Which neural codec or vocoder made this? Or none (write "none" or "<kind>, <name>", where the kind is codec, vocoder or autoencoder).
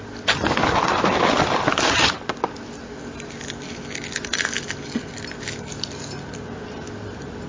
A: none